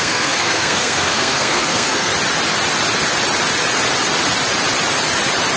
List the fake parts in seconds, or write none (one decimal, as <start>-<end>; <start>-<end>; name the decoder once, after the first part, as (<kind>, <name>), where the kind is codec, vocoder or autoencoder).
0.0-2.1 (codec, SNAC)